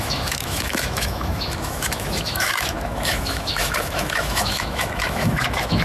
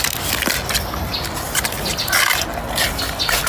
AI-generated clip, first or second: first